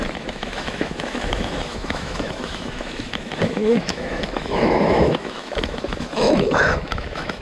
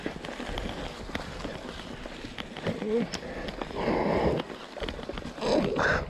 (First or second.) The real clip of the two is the second